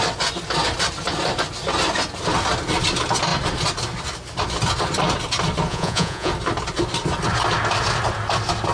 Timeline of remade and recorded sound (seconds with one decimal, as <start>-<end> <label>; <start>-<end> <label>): 0.0-5.7 recorded; 5.7-6.3 remade; 6.3-8.7 recorded